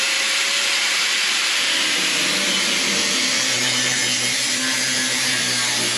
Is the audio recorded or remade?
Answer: remade